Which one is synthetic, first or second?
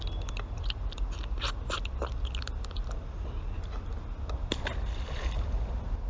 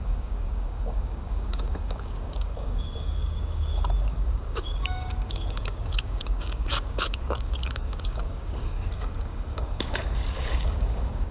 second